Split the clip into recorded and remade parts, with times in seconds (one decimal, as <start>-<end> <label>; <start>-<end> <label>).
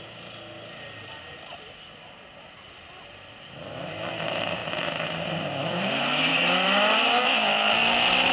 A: 0.0-6.3 recorded; 6.3-7.2 remade; 7.2-8.3 recorded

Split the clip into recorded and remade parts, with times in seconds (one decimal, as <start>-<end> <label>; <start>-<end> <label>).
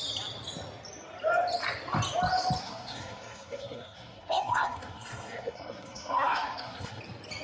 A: 0.0-2.6 recorded; 2.6-7.0 remade; 7.0-7.4 recorded